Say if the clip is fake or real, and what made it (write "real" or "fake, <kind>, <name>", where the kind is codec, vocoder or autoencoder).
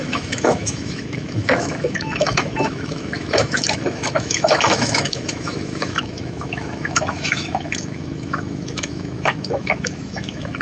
fake, autoencoder, DAC-VAE